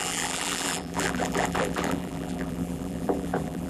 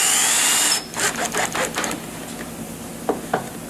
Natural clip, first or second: second